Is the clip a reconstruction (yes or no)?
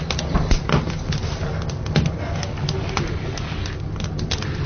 no